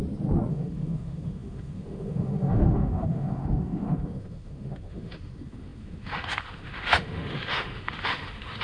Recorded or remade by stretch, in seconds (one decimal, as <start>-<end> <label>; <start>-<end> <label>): 0.0-0.5 recorded; 0.5-8.6 remade